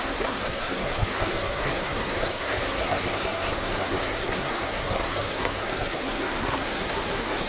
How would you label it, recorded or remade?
remade